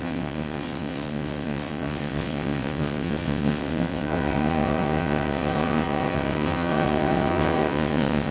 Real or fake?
fake